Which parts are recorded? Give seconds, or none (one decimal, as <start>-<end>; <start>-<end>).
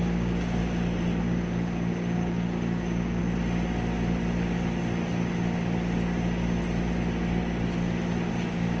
0.6-1.2; 3.2-8.3